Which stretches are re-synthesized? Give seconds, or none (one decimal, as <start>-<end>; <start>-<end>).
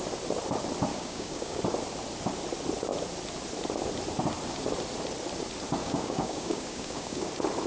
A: 0.9-1.6; 5.8-7.3